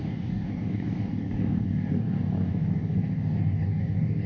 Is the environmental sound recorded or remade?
remade